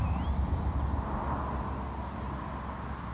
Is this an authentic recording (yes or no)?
yes